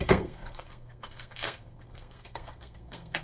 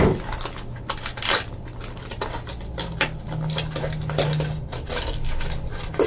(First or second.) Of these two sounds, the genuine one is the second